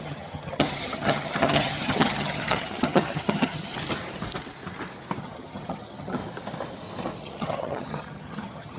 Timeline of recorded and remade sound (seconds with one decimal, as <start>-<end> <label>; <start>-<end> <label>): 0.0-3.7 remade; 3.7-5.2 recorded; 5.2-6.2 remade; 6.2-7.2 recorded; 7.2-8.8 remade